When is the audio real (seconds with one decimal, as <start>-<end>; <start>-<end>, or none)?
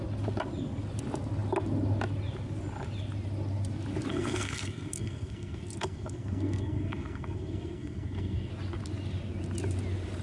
0.0-4.1; 8.5-10.2